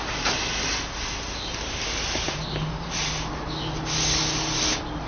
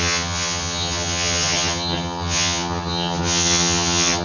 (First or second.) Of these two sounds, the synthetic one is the second